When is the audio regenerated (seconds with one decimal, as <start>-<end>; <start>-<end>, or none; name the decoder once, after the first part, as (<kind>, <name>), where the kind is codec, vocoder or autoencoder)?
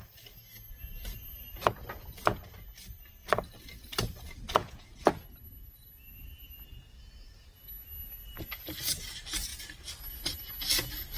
4.6-5.1 (vocoder, Vocos)